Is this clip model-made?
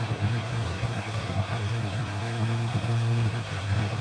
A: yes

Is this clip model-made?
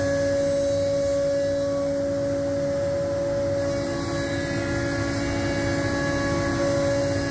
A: no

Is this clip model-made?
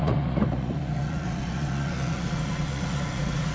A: yes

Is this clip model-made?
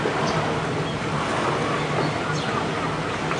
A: no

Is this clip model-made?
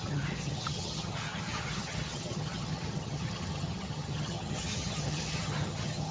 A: yes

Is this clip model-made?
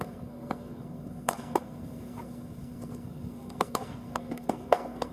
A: yes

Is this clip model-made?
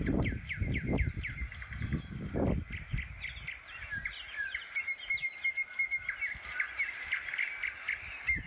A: no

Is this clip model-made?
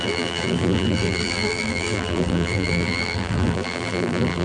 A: yes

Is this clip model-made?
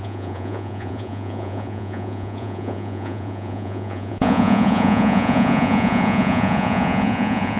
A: yes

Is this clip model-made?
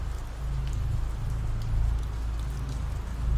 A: no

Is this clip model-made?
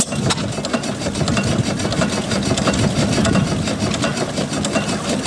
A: no